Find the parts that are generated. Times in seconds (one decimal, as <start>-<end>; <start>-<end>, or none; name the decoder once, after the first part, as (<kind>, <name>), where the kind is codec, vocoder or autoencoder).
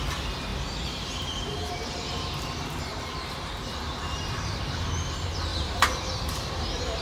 0.5-4.6 (vocoder, BigVGAN v2); 5.5-7.0